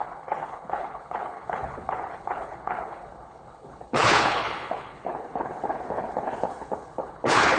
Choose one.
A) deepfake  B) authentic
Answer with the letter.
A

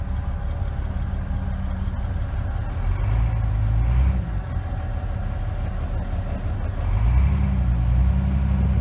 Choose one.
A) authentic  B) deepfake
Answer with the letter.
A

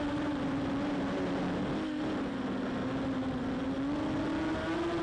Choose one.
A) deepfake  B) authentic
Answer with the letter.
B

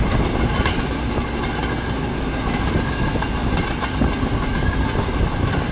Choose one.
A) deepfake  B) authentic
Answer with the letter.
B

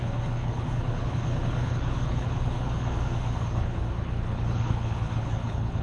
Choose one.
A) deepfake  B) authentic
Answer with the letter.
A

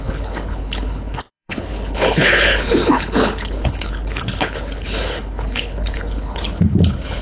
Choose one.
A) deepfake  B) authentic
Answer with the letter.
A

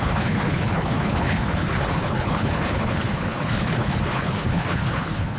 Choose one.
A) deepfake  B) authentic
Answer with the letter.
A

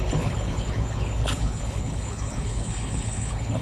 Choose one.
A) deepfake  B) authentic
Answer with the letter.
A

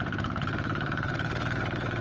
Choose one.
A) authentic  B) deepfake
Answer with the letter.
B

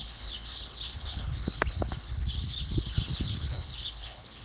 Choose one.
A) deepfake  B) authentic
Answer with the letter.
A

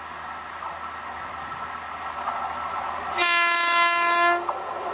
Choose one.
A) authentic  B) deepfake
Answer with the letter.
A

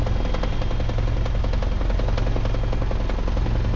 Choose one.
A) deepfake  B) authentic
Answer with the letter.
B